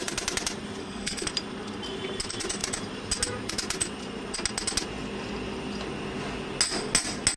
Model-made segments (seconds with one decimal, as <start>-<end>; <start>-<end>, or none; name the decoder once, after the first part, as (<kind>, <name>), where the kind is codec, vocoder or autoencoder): 0.8-1.3 (codec, SNAC)